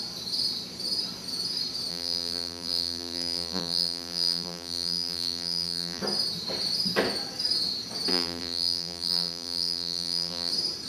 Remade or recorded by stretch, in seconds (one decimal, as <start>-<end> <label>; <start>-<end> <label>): 0.0-1.9 recorded; 1.9-6.0 remade; 6.0-8.1 recorded; 8.1-10.5 remade; 10.5-10.9 recorded